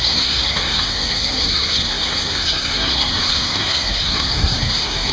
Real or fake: fake